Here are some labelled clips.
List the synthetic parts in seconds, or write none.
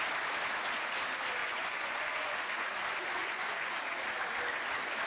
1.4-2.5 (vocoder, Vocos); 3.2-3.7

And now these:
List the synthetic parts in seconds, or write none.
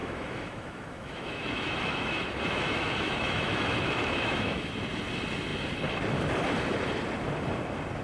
0.0-4.7 (autoencoder, DAC-VAE)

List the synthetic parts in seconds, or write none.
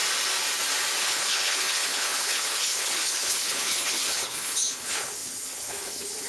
1.0-6.3 (codec, HILCodec)